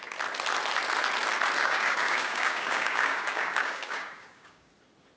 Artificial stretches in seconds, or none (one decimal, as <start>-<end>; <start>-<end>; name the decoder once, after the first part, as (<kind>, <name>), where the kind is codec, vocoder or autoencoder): 1.6-4.7 (codec, DAC)